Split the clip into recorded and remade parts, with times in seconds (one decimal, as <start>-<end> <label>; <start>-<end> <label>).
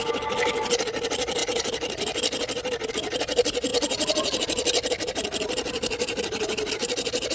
0.0-7.3 recorded